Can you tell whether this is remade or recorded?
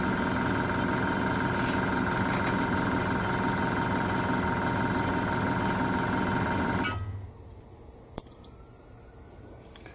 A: recorded